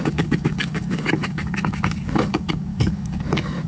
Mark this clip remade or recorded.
remade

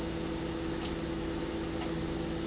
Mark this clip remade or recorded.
recorded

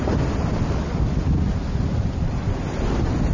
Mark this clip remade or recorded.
recorded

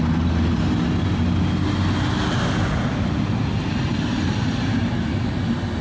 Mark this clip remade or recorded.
recorded